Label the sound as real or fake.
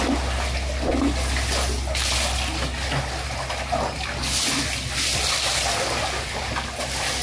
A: real